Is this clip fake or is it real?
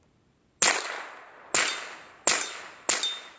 real